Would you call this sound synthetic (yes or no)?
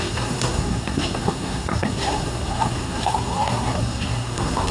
yes